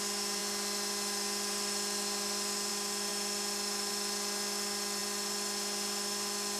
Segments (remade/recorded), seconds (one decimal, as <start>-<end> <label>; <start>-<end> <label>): 0.0-6.6 recorded